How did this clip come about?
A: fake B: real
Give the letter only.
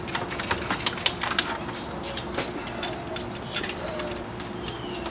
B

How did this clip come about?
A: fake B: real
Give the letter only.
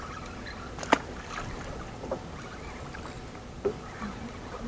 B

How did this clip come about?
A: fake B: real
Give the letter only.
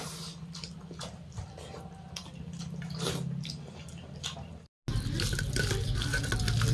B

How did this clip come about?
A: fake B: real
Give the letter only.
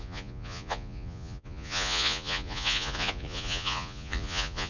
A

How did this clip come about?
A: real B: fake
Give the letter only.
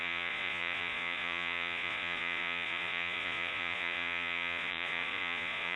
B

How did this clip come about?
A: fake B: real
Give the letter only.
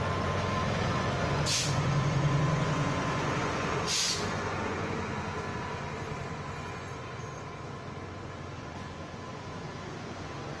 A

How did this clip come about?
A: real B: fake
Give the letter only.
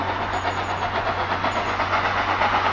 B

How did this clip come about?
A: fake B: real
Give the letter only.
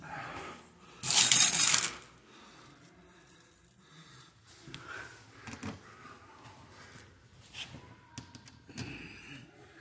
B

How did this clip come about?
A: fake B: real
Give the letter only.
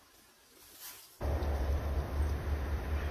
B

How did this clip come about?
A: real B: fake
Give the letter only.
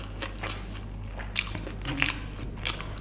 A